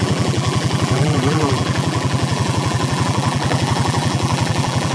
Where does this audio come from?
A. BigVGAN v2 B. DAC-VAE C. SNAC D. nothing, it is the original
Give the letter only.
A